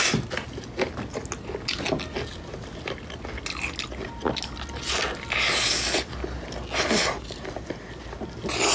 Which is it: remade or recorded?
recorded